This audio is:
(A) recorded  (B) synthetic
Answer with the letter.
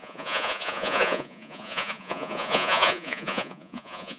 B